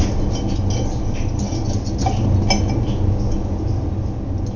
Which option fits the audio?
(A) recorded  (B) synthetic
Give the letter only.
A